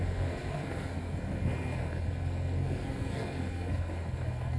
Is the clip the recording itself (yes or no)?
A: no